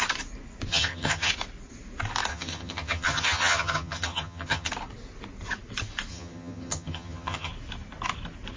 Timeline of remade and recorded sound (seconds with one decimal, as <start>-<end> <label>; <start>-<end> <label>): 0.0-0.7 recorded; 0.7-1.3 remade; 1.3-2.3 recorded; 2.3-4.7 remade; 4.7-6.1 recorded; 6.1-7.5 remade; 7.5-8.6 recorded